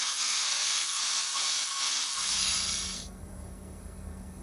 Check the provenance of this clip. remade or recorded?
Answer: remade